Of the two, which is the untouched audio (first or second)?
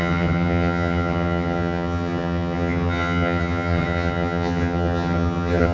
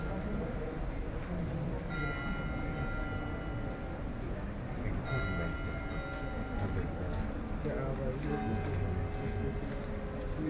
second